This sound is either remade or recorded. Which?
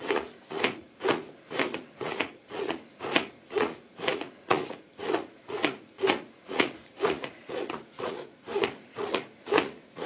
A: remade